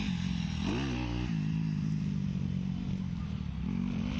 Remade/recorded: recorded